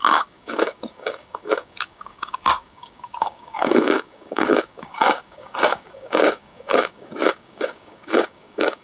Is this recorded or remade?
remade